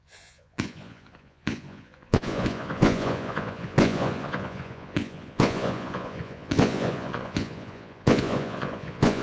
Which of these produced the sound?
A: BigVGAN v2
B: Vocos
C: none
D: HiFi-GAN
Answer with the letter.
B